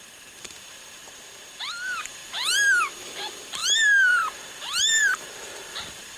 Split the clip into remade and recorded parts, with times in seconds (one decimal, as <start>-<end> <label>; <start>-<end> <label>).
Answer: 0.0-6.2 remade